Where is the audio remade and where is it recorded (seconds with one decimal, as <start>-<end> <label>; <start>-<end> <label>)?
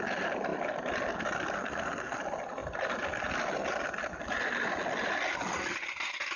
0.0-1.6 recorded; 1.6-2.2 remade; 2.2-6.4 recorded